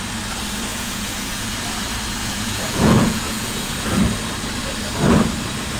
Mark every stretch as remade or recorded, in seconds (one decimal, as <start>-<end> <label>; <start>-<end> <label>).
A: 0.0-0.7 recorded; 0.7-1.5 remade; 1.5-2.2 recorded; 2.2-4.0 remade; 4.0-5.8 recorded